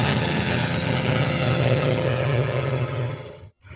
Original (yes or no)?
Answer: no